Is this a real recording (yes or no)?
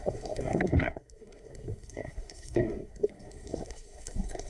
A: no